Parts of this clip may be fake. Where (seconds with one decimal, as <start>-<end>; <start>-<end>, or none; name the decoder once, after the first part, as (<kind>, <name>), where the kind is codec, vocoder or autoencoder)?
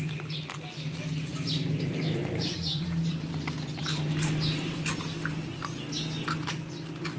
1.3-3.1 (vocoder, BigVGAN v2)